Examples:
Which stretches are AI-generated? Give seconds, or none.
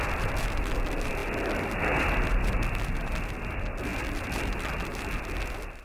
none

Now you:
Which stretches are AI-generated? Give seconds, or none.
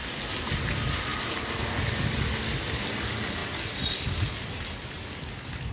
none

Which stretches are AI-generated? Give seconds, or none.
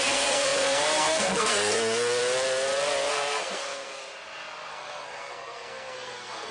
0.0-2.2 (codec, SNAC); 3.1-4.0; 4.7-6.5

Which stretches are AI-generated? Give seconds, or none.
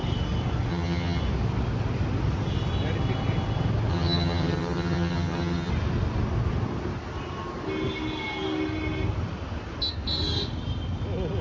0.7-1.2 (vocoder, HiFi-GAN); 3.9-5.7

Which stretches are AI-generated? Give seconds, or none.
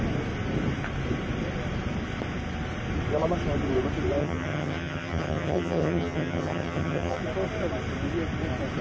4.2-7.2 (vocoder, HiFi-GAN)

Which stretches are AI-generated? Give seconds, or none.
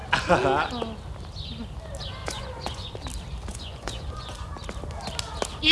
2.2-2.9 (vocoder, Vocos); 3.5-4.5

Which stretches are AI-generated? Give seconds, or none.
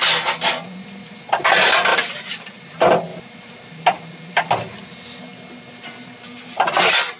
1.9-2.6 (vocoder, BigVGAN v2); 3.1-4.5